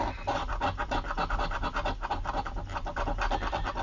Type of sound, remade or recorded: recorded